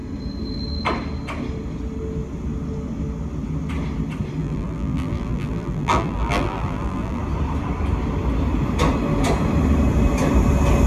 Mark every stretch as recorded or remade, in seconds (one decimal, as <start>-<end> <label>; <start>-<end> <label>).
0.0-4.4 recorded; 4.4-7.2 remade; 7.2-10.9 recorded

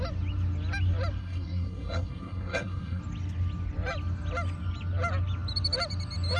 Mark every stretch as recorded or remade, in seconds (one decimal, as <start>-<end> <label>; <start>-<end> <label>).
0.0-1.2 recorded; 1.2-3.0 remade; 3.0-6.4 recorded

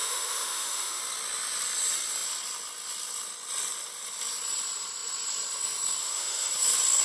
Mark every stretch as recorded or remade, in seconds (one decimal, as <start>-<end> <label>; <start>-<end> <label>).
0.0-1.0 remade; 1.0-6.0 recorded; 6.0-6.5 remade; 6.5-7.0 recorded